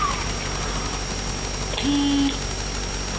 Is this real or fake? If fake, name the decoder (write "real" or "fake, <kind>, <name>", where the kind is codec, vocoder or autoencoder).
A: real